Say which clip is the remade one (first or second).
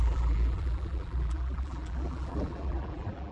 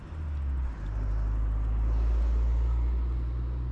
first